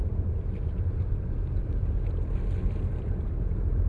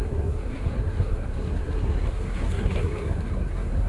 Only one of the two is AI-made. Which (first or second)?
second